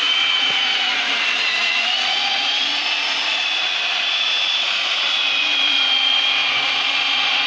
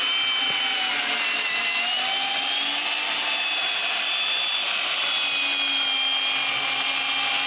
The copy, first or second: first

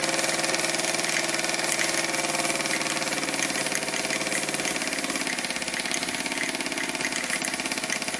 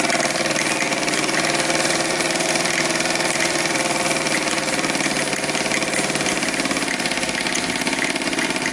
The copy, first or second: second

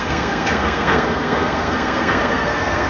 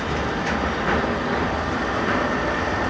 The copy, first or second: first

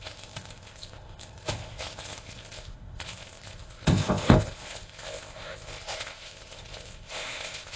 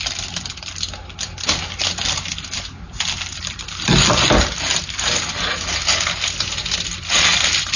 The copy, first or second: first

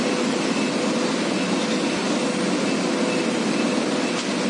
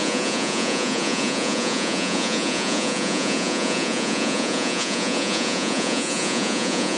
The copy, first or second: second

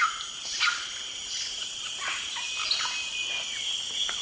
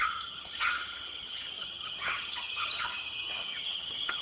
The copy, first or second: second